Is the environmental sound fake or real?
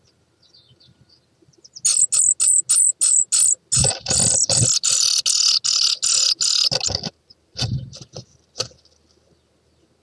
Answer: real